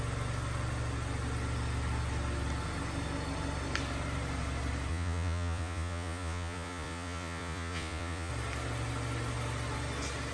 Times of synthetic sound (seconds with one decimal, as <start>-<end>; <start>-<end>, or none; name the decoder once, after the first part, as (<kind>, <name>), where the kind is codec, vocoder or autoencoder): 4.9-8.3 (vocoder, Vocos)